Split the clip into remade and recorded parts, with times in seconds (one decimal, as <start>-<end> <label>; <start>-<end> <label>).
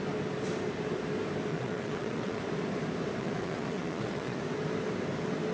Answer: 0.0-1.5 recorded; 1.5-2.4 remade; 2.4-3.2 recorded; 3.2-4.4 remade; 4.4-5.5 recorded